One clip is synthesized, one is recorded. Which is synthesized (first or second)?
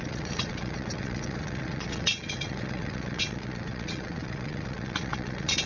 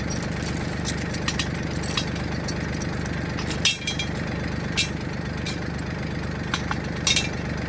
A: first